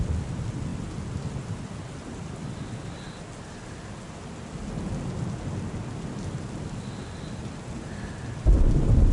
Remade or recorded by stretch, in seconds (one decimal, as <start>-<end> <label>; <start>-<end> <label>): 0.0-9.1 recorded